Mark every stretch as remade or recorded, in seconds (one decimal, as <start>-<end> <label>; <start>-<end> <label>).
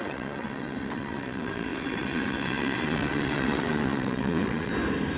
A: 0.0-4.7 remade; 4.7-5.2 recorded